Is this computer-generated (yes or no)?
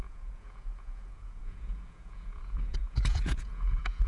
yes